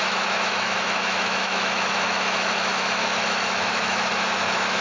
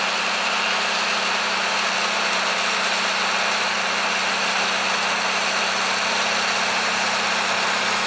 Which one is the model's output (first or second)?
first